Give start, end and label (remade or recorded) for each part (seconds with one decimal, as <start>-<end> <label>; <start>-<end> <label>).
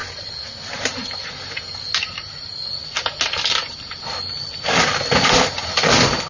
0.0-3.8 recorded; 3.8-6.3 remade